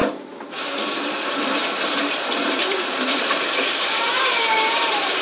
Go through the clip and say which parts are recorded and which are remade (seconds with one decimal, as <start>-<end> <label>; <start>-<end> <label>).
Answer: 0.0-5.2 remade